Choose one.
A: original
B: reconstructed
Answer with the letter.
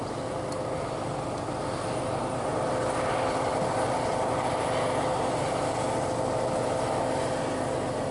A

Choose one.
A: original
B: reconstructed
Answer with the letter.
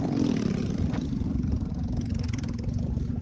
A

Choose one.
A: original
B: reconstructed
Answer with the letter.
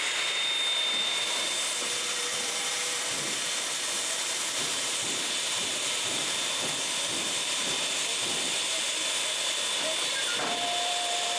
B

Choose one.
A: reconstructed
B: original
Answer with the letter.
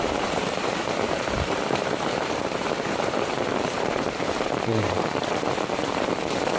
A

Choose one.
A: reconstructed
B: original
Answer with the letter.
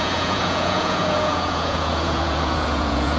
A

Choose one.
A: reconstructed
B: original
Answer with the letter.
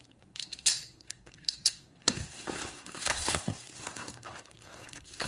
A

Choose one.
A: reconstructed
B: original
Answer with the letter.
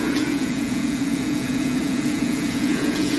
A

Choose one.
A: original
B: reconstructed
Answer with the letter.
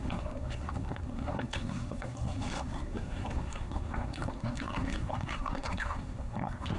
B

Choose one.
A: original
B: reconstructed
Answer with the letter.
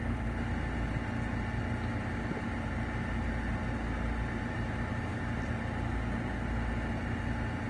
A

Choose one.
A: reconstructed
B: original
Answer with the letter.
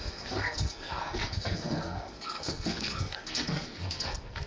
A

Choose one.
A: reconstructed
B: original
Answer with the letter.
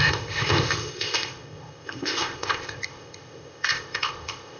A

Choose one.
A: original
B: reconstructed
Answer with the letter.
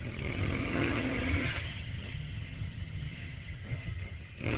B